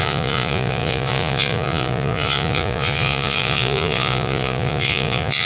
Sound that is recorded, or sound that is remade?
remade